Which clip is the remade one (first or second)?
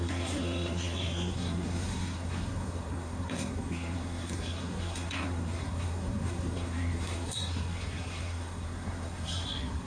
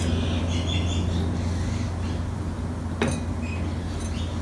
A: first